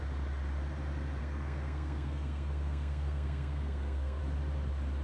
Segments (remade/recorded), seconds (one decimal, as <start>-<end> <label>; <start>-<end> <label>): 0.0-1.2 recorded; 1.2-4.2 remade; 4.2-5.0 recorded